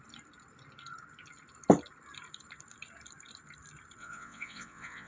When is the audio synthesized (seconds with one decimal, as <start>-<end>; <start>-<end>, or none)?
4.0-5.1